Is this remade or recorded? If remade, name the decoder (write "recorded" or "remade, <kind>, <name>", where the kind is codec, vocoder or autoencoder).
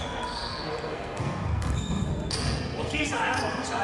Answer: remade, codec, SNAC